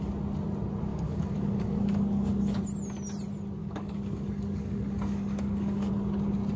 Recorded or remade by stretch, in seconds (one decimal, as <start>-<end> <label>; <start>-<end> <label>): 0.0-0.9 recorded; 0.9-2.6 remade; 2.6-3.6 recorded; 3.6-5.9 remade; 5.9-6.6 recorded